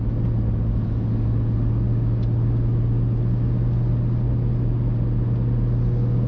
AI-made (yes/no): no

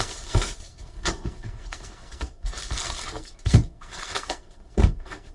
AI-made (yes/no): yes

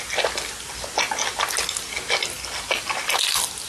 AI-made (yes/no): no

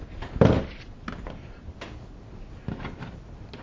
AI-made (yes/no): no